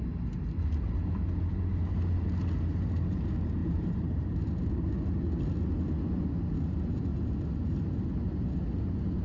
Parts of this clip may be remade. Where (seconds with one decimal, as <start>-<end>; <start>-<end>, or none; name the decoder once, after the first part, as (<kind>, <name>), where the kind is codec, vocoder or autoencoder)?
3.6-4.7 (vocoder, BigVGAN v2); 7.1-8.5